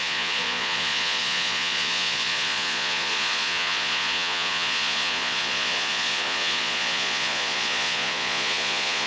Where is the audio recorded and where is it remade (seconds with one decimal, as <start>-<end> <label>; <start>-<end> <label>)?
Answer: 0.0-9.1 remade